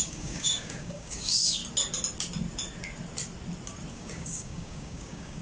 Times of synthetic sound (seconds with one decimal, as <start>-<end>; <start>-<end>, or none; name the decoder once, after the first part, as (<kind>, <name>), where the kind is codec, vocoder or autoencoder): 0.0-1.6 (codec, DAC); 3.9-5.4